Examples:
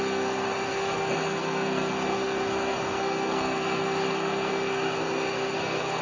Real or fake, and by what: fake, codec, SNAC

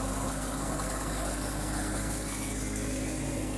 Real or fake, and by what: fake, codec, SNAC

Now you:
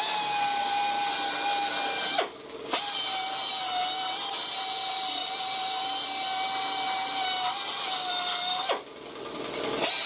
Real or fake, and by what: real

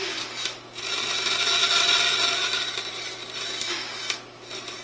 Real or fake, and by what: real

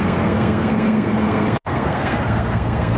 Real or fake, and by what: fake, codec, SNAC